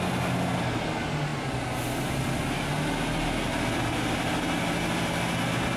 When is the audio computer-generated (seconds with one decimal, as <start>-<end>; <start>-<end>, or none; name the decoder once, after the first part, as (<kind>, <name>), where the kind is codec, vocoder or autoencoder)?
none